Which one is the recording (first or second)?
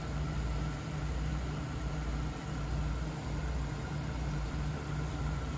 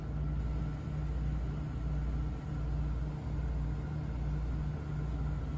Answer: second